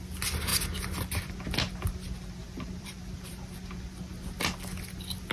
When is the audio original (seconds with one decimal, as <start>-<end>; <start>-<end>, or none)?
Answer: 0.0-2.4; 3.3-5.3